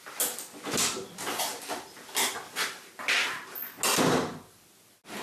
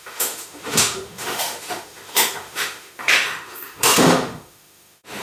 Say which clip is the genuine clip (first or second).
first